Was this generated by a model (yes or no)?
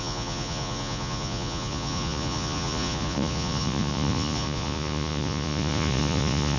yes